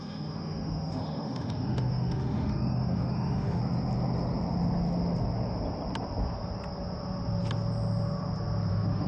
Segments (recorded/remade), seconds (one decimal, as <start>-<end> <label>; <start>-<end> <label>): 0.0-3.6 remade; 3.6-8.7 recorded; 8.7-9.1 remade